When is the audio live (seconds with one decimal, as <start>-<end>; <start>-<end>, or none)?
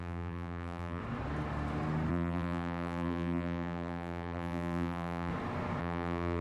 1.0-2.1; 5.3-5.8